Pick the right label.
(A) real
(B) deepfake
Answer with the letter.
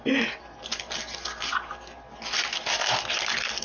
A